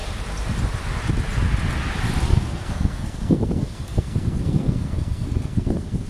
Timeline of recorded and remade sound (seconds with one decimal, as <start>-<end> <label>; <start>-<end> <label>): 0.0-2.3 recorded; 2.3-6.1 remade